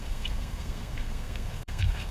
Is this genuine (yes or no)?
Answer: no